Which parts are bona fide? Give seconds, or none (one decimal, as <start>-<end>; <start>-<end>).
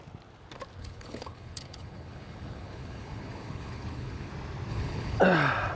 0.0-0.8; 4.3-4.7; 5.2-5.8